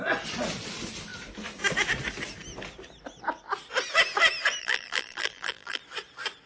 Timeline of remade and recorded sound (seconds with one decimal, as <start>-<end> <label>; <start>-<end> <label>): 0.0-4.6 recorded; 4.6-5.8 remade; 5.8-6.5 recorded